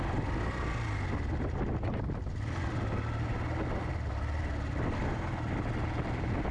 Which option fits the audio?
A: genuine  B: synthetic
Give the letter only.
A